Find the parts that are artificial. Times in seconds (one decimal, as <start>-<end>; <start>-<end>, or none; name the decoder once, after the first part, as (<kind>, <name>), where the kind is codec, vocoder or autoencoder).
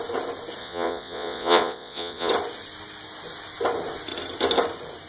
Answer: 0.6-2.3 (vocoder, Vocos)